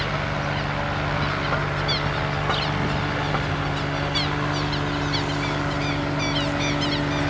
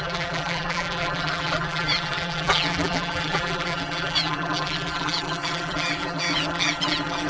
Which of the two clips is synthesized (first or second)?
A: second